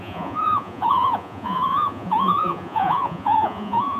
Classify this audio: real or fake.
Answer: fake